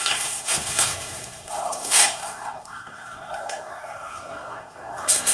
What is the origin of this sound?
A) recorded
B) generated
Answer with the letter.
B